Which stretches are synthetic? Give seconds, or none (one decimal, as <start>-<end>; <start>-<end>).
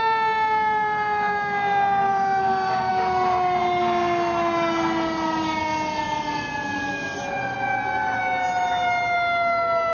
none